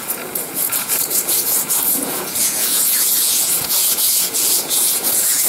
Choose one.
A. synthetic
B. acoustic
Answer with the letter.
A